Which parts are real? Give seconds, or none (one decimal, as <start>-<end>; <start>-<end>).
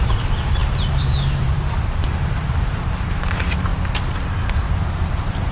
3.7-5.5